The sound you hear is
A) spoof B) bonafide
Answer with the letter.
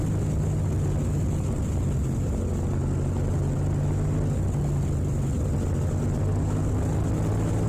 B